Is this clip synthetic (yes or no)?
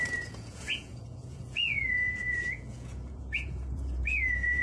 yes